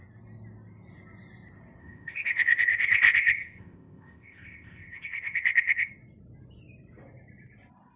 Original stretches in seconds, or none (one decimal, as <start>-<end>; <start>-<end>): 0.0-1.8; 5.9-8.0